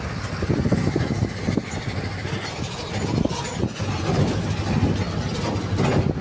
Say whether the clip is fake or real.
real